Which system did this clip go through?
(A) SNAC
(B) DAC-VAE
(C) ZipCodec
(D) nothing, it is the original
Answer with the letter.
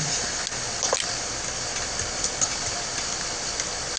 D